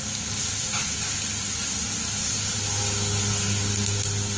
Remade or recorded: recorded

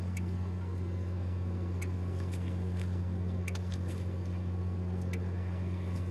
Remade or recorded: remade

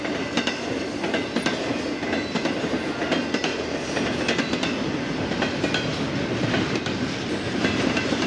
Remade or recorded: recorded